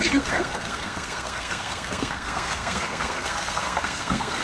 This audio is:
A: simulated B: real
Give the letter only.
A